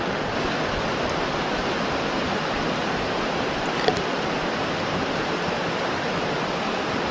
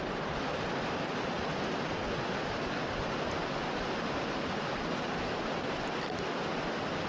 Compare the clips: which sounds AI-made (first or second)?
first